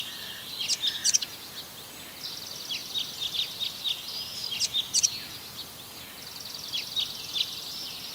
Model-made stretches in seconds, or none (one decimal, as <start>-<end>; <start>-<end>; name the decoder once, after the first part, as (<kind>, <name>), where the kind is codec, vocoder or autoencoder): none